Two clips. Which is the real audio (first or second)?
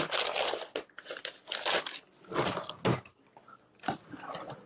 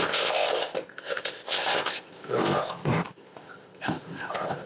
first